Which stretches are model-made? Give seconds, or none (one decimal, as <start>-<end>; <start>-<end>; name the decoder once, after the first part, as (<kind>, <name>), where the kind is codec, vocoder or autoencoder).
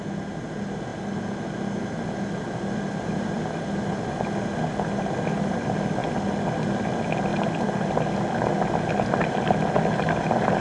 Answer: none